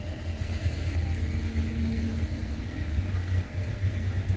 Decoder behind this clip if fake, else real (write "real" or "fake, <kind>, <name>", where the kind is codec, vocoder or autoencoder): fake, codec, SNAC